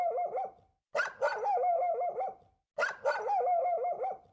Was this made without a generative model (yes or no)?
yes